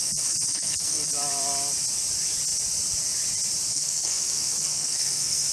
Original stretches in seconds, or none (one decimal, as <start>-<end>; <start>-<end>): 1.1-3.7